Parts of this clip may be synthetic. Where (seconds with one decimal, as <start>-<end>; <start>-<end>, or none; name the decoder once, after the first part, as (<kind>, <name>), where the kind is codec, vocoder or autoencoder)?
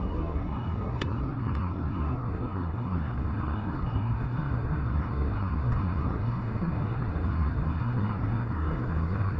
0.0-9.4 (codec, SNAC)